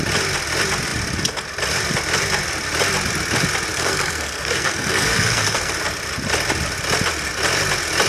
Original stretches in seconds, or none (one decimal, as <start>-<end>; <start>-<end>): 0.0-3.7; 5.7-8.1